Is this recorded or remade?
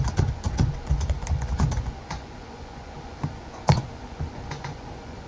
remade